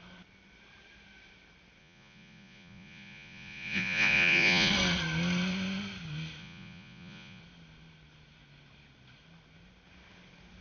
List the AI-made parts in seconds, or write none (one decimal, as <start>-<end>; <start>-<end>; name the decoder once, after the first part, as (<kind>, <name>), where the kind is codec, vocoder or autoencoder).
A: 1.8-4.7 (vocoder, Vocos); 6.4-7.4